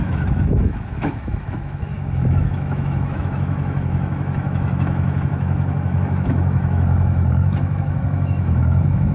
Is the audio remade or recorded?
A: remade